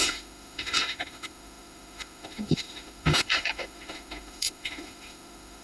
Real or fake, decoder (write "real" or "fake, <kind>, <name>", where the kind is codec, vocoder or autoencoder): fake, autoencoder, DAC-VAE